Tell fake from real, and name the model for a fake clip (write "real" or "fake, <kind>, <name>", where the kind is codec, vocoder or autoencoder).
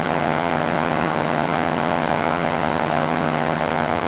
fake, vocoder, HiFi-GAN